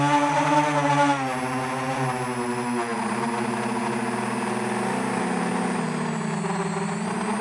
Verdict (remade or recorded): recorded